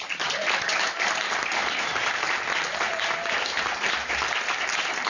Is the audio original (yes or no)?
no